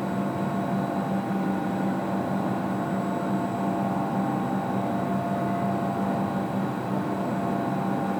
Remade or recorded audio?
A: recorded